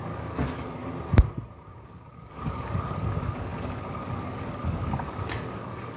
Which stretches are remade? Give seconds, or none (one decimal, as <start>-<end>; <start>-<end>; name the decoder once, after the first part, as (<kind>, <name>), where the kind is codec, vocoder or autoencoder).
0.0-0.8 (codec, DAC); 1.7-6.0